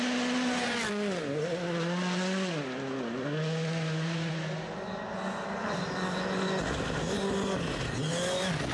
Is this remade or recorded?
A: recorded